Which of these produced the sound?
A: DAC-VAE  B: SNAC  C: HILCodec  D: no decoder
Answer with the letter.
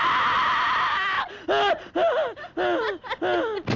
D